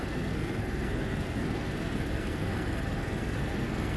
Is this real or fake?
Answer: fake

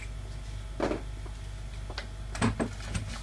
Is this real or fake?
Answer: real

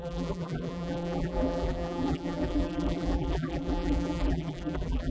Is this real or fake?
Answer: fake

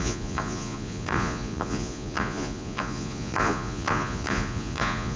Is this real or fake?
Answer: fake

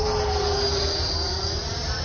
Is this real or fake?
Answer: real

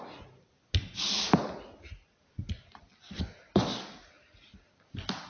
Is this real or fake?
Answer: real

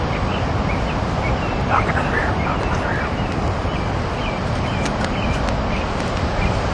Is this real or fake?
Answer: real